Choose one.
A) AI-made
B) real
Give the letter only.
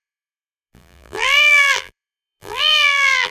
A